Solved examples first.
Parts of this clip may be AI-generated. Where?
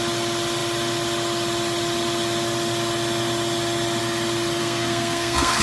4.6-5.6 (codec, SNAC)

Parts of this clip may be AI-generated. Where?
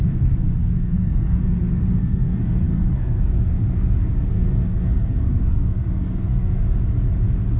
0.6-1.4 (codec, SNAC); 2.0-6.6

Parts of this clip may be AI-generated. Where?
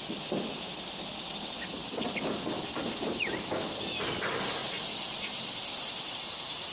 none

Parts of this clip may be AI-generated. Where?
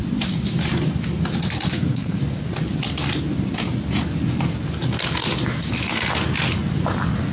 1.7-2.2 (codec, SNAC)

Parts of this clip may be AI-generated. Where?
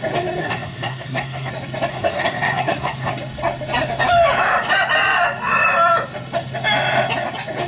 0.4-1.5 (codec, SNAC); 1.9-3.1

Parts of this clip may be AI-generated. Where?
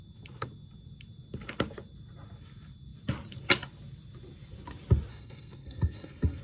5.1-6.4 (codec, SNAC)